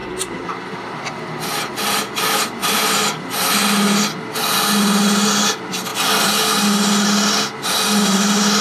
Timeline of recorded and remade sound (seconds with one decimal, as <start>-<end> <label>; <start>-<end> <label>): 0.0-1.1 remade; 1.1-8.6 recorded